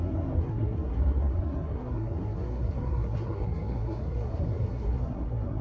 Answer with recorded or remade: remade